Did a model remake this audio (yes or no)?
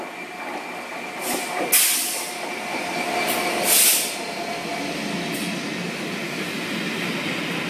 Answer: no